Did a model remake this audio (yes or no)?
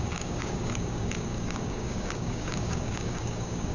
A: yes